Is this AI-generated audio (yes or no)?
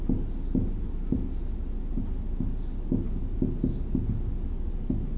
no